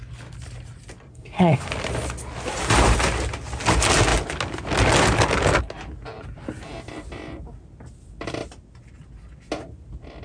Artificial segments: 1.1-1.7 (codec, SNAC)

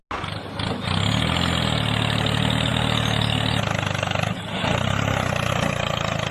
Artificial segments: none

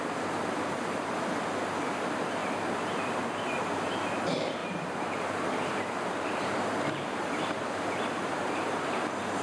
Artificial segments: 2.4-3.9 (vocoder, BigVGAN v2); 4.6-9.4

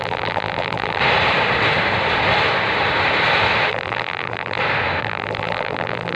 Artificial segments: 0.0-1.0 (vocoder, BigVGAN v2); 3.7-4.6; 5.0-6.2

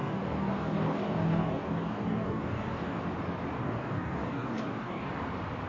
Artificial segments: 0.0-3.0 (codec, DAC); 3.6-5.1

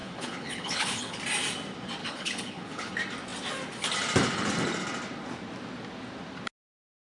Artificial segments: 0.0-1.2 (codec, HILCodec); 2.0-2.9